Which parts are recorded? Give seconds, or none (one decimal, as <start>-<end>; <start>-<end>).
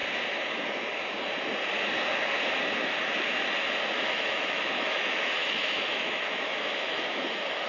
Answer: 0.0-3.9